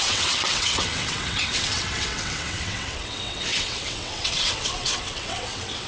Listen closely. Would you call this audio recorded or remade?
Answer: remade